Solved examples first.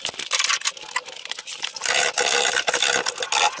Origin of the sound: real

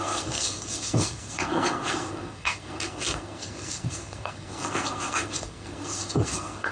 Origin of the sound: fake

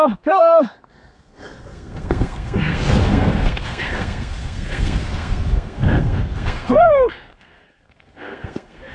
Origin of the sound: fake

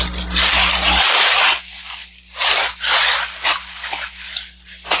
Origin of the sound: real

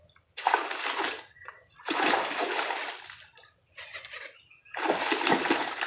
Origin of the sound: real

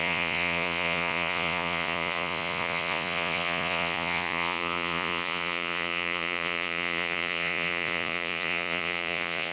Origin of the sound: fake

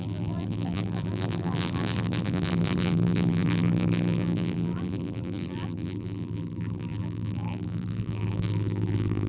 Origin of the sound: fake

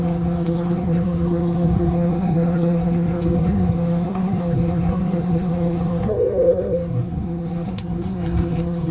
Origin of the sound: fake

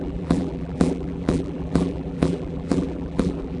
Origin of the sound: fake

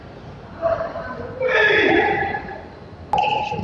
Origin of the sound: real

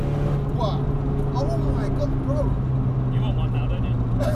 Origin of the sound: real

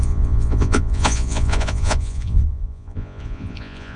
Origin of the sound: fake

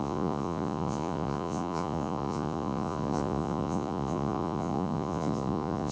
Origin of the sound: fake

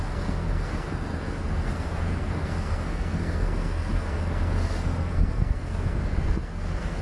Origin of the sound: fake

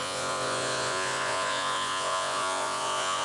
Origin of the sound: fake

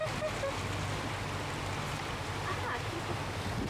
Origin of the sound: real